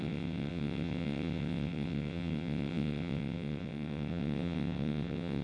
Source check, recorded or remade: remade